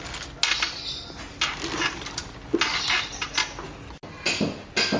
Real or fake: real